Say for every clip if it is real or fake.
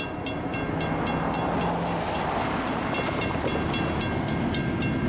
real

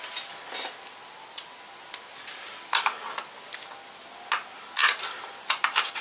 real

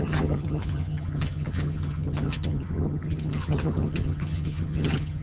fake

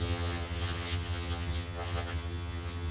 fake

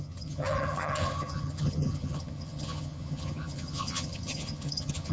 fake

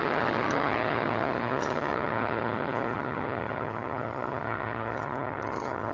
fake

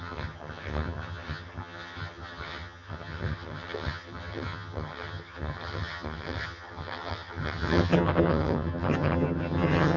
fake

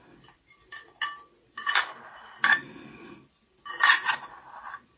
real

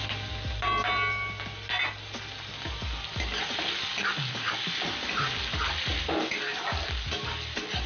real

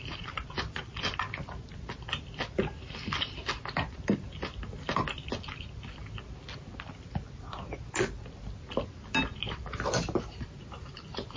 real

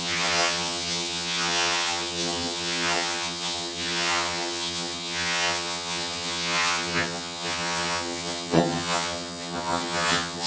fake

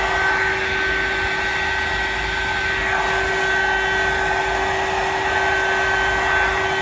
real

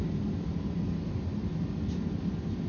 real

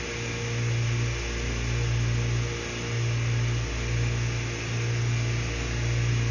real